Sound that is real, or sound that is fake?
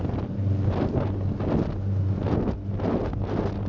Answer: real